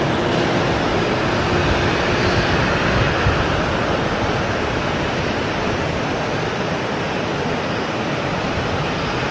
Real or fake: real